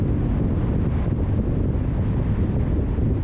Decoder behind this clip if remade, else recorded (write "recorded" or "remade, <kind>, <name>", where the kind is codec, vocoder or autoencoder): recorded